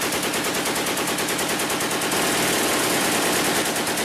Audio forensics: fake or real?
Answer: real